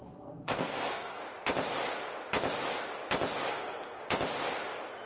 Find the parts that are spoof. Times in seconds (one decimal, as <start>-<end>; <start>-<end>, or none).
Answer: 0.0-1.2; 3.5-4.0